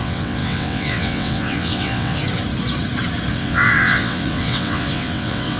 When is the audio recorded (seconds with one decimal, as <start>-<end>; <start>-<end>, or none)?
2.2-3.3